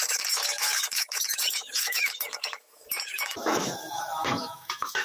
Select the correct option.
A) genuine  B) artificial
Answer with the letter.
B